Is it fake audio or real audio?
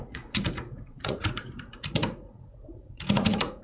fake